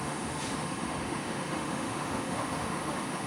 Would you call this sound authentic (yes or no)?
no